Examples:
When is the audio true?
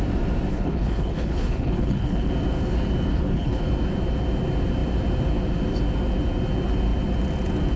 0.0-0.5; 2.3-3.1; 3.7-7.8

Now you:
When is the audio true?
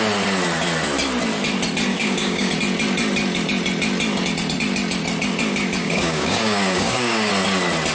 0.0-1.9; 2.5-5.8; 7.3-7.9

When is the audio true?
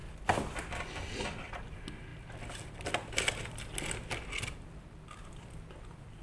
0.0-6.2